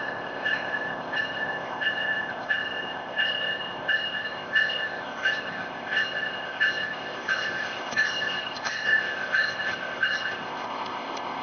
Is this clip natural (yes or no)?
no